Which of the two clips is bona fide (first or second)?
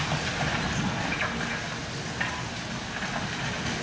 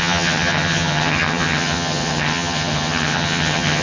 first